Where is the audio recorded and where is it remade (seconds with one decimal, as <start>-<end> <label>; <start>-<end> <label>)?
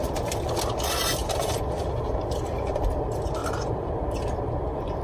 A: 0.0-1.2 recorded; 1.2-2.2 remade; 2.2-3.4 recorded; 3.4-3.9 remade; 3.9-5.0 recorded